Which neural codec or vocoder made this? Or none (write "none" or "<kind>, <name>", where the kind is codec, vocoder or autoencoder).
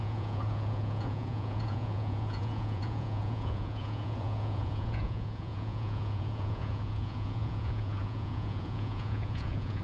vocoder, Vocos